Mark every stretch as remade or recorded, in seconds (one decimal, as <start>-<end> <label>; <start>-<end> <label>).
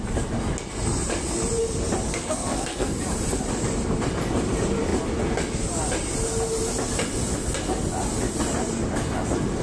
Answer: 0.0-2.1 recorded; 2.1-3.0 remade; 3.0-9.6 recorded